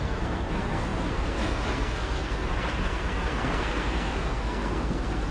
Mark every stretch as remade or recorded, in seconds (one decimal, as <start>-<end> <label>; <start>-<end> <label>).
0.0-5.3 remade